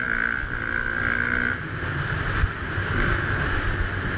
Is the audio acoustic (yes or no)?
yes